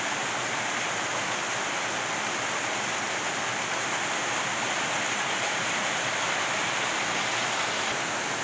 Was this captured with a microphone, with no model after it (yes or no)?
yes